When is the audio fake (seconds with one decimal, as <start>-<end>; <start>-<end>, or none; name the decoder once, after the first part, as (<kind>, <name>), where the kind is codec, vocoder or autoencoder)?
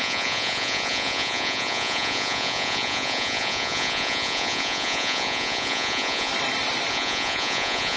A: 0.0-6.3 (vocoder, Vocos); 6.9-8.0